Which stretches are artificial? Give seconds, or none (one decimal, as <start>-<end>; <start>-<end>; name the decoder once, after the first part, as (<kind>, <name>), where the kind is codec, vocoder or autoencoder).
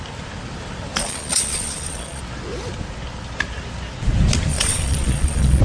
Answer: 1.0-2.2 (vocoder, Vocos); 4.5-5.6